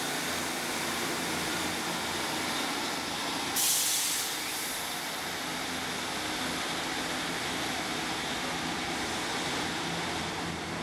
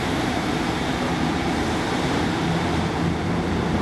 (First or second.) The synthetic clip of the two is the second